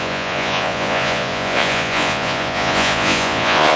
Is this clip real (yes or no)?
no